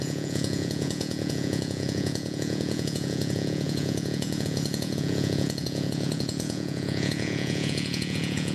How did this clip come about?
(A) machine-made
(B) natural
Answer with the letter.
A